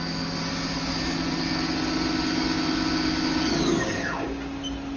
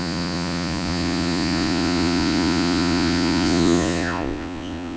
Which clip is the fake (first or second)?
second